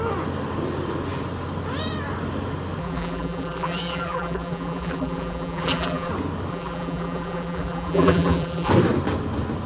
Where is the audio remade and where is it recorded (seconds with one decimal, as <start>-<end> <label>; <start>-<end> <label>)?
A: 0.0-2.8 recorded; 2.8-6.1 remade; 6.1-6.5 recorded; 6.5-8.7 remade; 8.7-9.7 recorded